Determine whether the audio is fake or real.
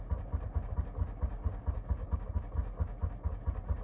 real